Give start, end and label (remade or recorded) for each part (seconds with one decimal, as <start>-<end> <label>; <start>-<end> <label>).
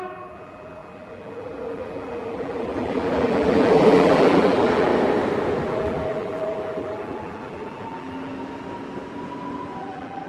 0.0-4.9 remade; 4.9-5.6 recorded; 5.6-8.3 remade; 8.3-9.8 recorded; 9.8-10.3 remade